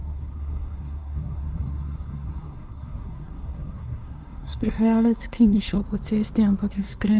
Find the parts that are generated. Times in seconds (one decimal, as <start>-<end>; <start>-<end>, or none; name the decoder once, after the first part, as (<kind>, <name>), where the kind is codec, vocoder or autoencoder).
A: 0.0-5.8 (codec, SNAC); 6.7-7.2